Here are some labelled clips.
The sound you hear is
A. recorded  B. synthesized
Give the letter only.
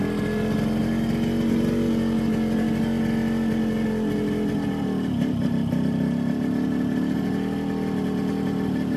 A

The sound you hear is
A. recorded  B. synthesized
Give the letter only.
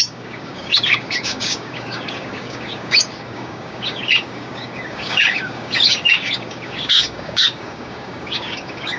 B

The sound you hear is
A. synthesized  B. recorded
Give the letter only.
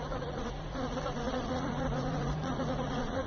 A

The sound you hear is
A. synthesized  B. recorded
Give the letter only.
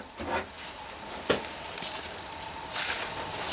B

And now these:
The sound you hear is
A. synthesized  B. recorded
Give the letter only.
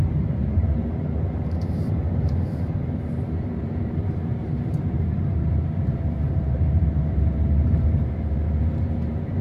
A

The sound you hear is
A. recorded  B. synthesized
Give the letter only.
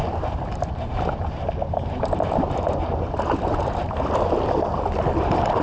A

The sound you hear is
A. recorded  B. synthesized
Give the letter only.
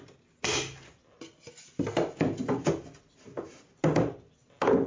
A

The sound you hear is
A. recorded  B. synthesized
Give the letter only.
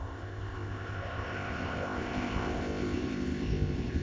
B